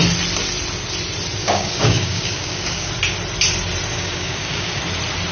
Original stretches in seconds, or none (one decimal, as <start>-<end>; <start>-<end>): 0.0-1.4; 2.9-3.9; 4.8-5.3